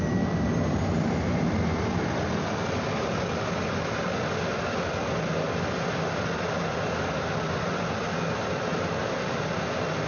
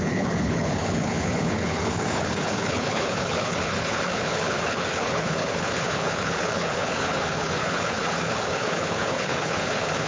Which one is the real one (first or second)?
first